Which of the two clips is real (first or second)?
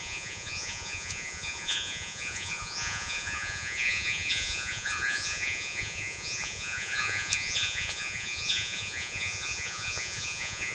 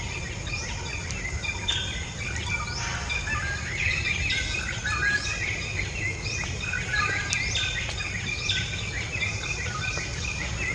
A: second